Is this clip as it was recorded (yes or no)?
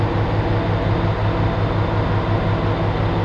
yes